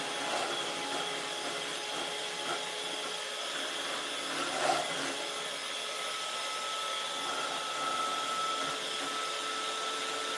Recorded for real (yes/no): yes